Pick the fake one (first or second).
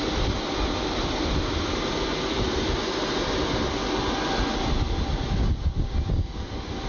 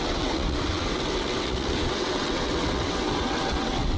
second